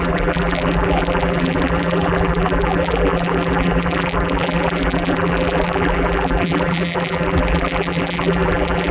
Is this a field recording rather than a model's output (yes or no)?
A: no